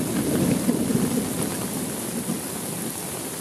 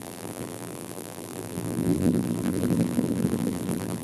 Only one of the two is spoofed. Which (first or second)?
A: second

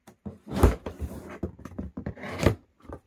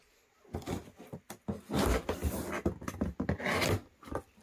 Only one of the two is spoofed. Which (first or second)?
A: first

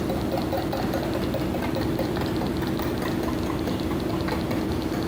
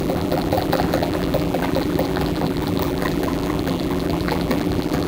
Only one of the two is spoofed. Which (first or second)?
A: second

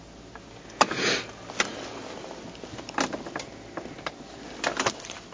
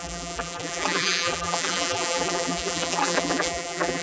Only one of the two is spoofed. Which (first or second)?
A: second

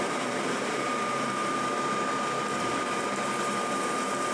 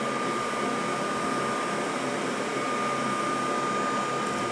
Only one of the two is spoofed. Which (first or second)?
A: first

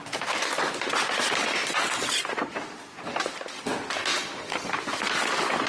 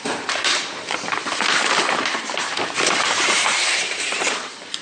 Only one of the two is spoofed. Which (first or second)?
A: second